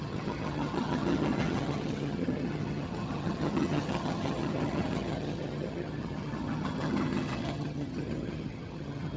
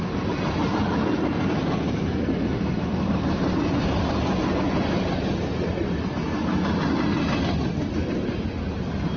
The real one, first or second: second